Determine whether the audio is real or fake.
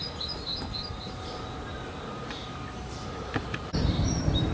fake